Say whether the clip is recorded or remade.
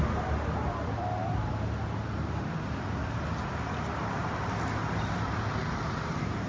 recorded